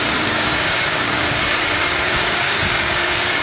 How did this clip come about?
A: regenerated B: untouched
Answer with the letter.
A